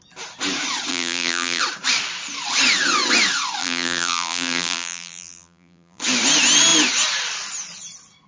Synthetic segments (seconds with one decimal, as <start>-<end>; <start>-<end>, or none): 0.9-1.6; 3.6-6.0